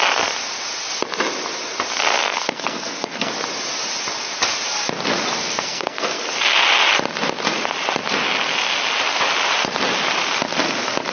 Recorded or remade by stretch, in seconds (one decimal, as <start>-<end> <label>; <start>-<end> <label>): 0.0-2.2 recorded; 2.2-3.3 remade; 3.3-5.4 recorded; 5.4-6.2 remade; 6.2-11.1 recorded